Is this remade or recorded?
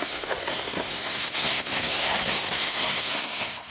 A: remade